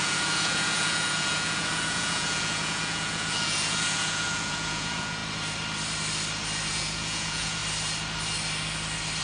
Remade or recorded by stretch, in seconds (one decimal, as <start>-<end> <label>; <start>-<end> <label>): 0.0-5.2 remade; 5.2-6.7 recorded; 6.7-7.6 remade; 7.6-9.2 recorded